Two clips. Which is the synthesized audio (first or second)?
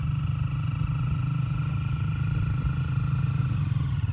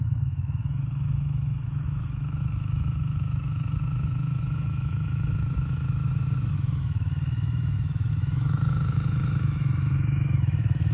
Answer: second